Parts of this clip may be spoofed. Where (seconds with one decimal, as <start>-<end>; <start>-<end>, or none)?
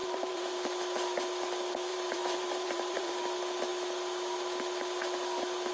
0.0-0.5; 1.9-3.1